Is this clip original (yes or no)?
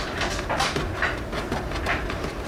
no